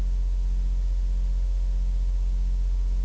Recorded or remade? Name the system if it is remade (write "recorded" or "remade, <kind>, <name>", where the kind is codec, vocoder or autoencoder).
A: recorded